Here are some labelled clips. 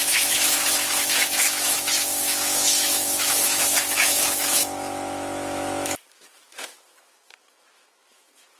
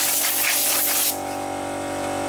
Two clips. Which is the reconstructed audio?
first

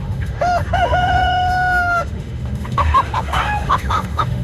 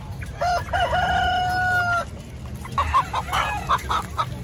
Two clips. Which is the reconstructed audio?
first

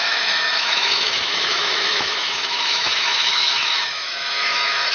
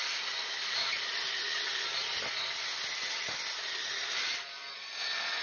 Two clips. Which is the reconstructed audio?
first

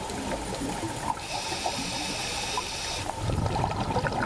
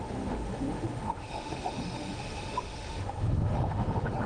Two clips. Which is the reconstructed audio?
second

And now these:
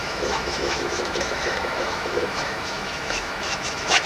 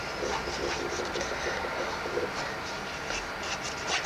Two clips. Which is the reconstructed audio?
first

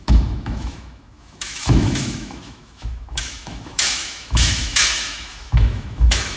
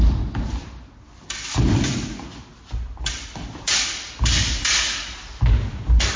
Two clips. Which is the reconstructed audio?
first